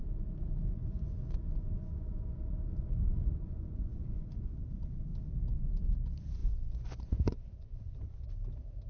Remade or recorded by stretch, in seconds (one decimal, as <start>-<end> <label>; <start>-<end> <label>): 0.0-0.7 recorded; 0.7-4.6 remade; 4.6-6.4 recorded; 6.4-8.3 remade; 8.3-8.9 recorded